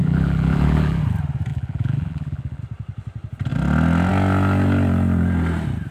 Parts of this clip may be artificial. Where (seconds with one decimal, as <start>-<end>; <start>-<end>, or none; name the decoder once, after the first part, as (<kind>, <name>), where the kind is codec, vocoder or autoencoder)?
0.0-1.0 (vocoder, BigVGAN v2); 1.5-2.6